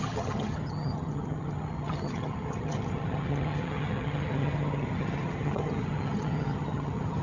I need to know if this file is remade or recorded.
remade